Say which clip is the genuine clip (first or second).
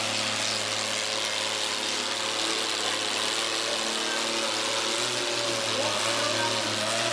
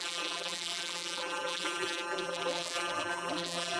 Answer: first